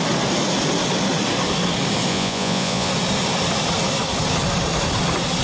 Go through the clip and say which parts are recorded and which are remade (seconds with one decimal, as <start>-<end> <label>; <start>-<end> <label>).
0.0-2.1 recorded; 2.1-2.9 remade; 2.9-5.4 recorded